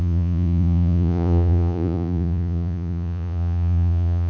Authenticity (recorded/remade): remade